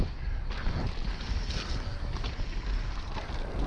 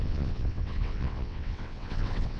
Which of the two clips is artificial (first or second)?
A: second